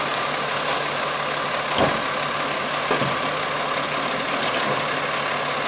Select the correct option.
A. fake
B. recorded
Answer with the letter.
B